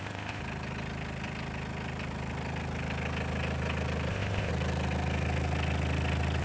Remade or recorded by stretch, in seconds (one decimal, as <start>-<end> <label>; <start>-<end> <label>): 0.0-0.4 remade; 0.4-4.1 recorded; 4.1-4.5 remade; 4.5-6.4 recorded